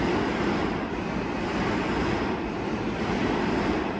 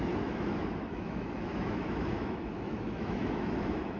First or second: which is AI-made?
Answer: second